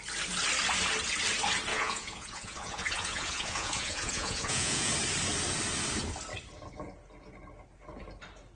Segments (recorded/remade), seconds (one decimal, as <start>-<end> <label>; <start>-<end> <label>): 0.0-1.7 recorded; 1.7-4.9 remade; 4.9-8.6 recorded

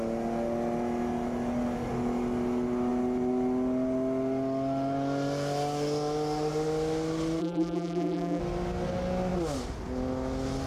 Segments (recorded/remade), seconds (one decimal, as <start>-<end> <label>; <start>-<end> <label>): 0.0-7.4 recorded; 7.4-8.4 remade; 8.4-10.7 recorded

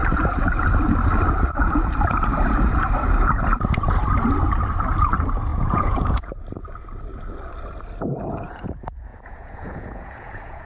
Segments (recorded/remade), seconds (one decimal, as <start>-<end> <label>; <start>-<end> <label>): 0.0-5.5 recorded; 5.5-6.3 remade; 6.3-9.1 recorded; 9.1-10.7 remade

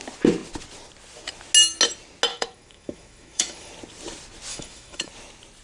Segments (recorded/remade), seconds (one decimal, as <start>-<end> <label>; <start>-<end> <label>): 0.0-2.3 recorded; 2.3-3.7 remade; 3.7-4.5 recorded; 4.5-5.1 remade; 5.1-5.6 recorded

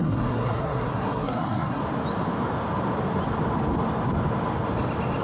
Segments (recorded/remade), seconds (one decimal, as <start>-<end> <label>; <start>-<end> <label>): 0.0-1.8 remade; 1.8-5.2 recorded